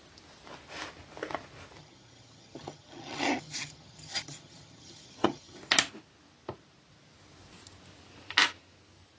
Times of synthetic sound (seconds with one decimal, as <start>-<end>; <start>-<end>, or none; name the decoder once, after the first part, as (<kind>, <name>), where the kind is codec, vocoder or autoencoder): 1.8-5.6 (vocoder, HiFi-GAN)